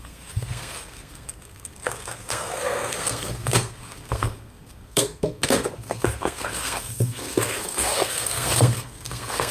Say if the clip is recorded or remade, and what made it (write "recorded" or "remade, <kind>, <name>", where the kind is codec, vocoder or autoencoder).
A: remade, codec, SNAC